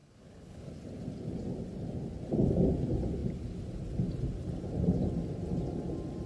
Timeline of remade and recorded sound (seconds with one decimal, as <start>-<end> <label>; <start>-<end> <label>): 0.0-0.7 remade; 0.7-6.3 recorded